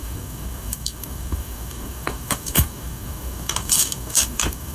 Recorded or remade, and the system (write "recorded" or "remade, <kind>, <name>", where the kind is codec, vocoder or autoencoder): remade, codec, DAC